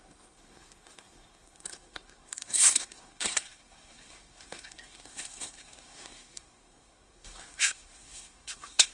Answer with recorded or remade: remade